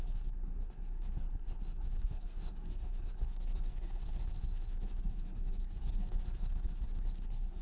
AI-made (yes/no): yes